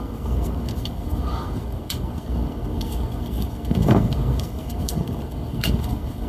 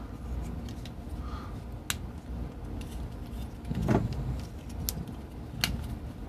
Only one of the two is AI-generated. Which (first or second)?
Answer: first